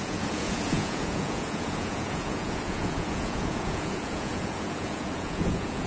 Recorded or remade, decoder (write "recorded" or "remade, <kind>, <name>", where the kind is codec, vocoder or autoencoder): remade, vocoder, Vocos